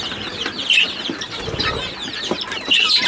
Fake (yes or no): no